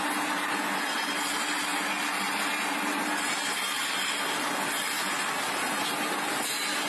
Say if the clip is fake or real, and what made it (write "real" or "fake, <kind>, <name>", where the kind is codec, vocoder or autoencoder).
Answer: real